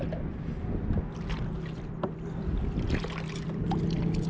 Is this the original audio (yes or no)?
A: yes